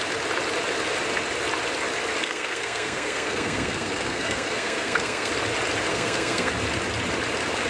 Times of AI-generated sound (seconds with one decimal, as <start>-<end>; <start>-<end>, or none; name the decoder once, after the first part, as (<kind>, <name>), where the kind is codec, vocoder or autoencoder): 2.2-5.3 (codec, SNAC); 5.9-6.5